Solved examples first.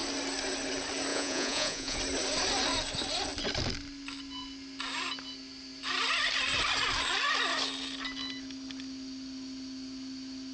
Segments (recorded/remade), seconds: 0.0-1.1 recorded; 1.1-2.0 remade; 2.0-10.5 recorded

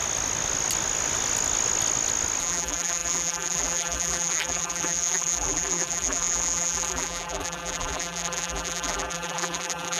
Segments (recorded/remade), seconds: 0.0-2.4 recorded; 2.4-10.0 remade

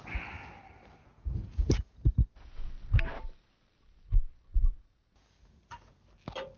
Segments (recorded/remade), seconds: 0.0-1.0 recorded; 1.0-2.7 remade; 2.7-4.6 recorded; 4.6-5.9 remade; 5.9-6.6 recorded